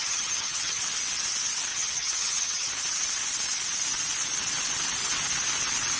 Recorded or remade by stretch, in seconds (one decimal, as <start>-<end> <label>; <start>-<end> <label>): 0.0-0.8 remade; 0.8-1.7 recorded; 1.7-2.7 remade; 2.7-6.0 recorded